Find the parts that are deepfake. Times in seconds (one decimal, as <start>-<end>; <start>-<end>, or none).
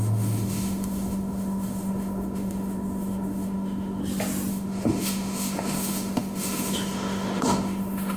0.0-4.0; 4.5-8.2